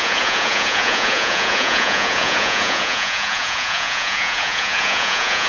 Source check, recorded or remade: remade